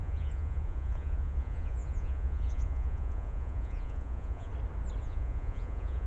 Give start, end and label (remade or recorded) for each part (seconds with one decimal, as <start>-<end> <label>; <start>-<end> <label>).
0.0-4.5 remade; 4.5-5.0 recorded; 5.0-6.1 remade